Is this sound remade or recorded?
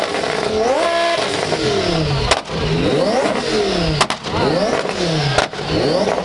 recorded